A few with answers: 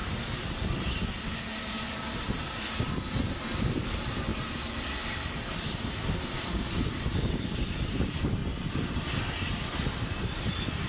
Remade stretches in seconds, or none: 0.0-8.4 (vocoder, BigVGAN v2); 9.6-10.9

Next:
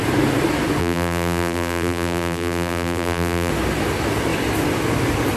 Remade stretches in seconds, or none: 0.8-3.5 (vocoder, BigVGAN v2)

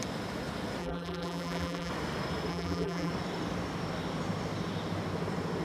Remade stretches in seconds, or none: 0.8-1.9 (vocoder, BigVGAN v2); 2.5-3.1

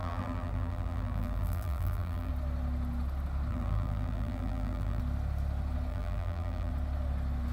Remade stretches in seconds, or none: 0.0-2.3 (vocoder, BigVGAN v2); 3.5-5.0; 5.9-6.7

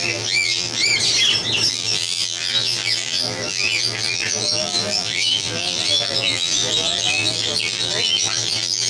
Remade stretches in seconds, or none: 0.0-0.8 (vocoder, BigVGAN v2); 1.7-8.9

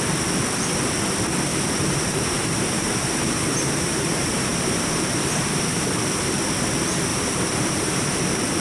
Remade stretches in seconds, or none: 1.5-6.3 (vocoder, BigVGAN v2); 7.1-8.2